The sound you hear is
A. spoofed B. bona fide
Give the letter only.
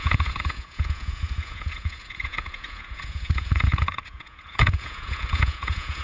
A